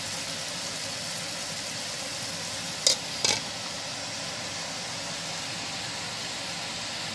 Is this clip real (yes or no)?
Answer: yes